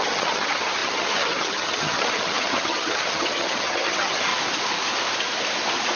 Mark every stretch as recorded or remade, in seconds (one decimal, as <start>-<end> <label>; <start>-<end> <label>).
0.0-4.3 remade; 4.3-6.0 recorded